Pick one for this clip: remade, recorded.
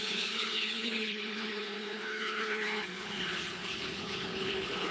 remade